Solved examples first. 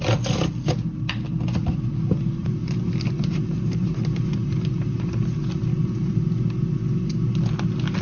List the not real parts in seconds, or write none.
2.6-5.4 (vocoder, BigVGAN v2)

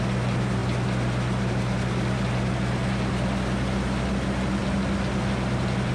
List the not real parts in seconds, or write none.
none